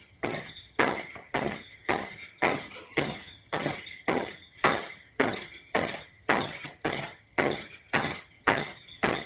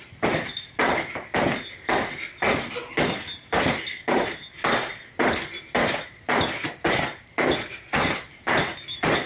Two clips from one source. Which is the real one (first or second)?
second